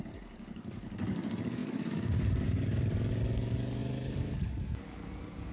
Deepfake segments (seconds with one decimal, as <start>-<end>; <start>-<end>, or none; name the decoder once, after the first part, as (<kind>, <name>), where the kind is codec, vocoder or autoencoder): 0.0-5.5 (codec, DAC)